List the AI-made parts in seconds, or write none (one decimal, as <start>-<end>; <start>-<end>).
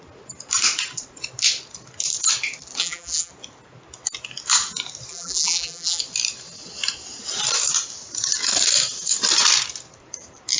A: 2.8-3.3; 5.1-6.0